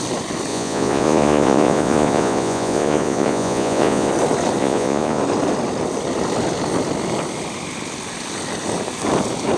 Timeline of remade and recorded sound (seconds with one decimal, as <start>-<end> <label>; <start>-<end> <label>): 0.0-0.5 recorded; 0.5-4.1 remade; 4.1-4.6 recorded; 4.6-5.2 remade; 5.2-9.6 recorded